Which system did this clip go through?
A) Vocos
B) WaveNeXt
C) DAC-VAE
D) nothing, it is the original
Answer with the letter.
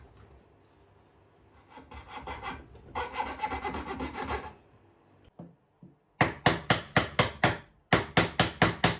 D